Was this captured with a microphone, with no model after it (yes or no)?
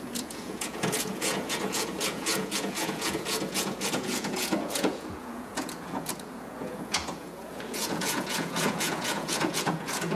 no